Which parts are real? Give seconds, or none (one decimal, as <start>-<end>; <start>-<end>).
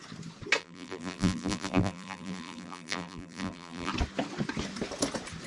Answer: 0.0-0.6; 3.9-5.5